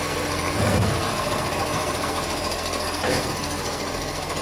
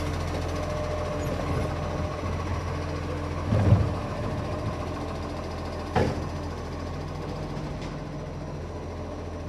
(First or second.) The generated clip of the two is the first